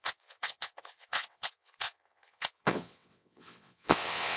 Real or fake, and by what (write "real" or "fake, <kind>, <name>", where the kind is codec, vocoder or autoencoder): fake, vocoder, WaveNeXt